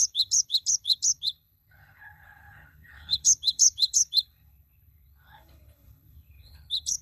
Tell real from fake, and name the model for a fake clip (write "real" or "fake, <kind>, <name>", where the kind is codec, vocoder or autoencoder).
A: fake, codec, HILCodec